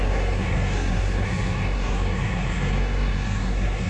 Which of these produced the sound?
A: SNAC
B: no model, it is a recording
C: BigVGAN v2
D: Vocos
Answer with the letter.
A